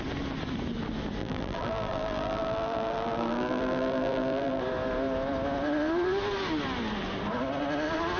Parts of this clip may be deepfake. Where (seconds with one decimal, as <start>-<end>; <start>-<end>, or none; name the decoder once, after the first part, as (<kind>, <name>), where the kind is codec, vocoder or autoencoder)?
1.2-4.6 (vocoder, BigVGAN v2)